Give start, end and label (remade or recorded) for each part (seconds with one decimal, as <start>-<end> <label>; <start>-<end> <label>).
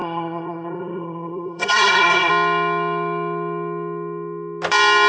0.0-2.3 remade; 2.3-5.1 recorded